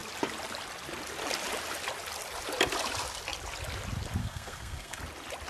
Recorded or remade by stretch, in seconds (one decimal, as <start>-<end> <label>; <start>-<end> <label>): 0.0-4.2 recorded; 4.2-5.0 remade; 5.0-5.5 recorded